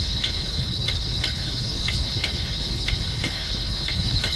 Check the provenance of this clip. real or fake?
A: fake